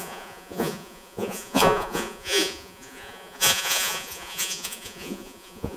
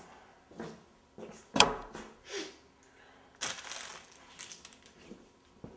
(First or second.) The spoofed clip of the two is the first